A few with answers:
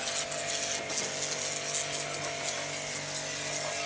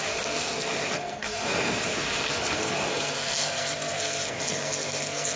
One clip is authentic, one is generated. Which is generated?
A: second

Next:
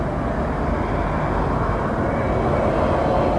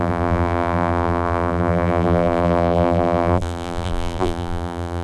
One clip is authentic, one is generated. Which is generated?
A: second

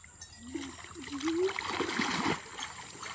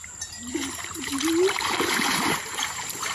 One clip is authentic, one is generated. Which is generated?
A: second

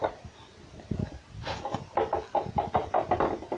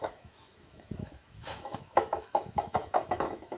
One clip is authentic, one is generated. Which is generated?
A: second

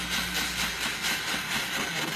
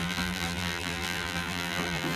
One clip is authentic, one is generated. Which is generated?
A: second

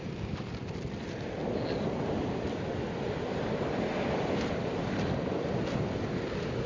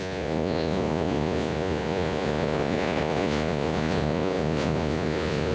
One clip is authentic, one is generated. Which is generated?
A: second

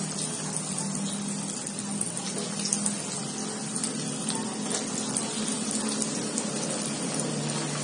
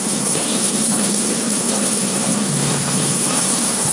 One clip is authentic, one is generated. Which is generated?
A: second